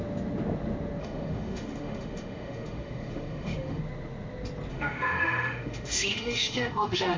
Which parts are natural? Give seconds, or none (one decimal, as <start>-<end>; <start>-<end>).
0.0-1.0; 3.8-4.7